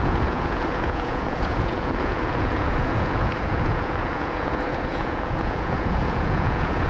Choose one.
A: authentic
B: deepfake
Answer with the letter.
B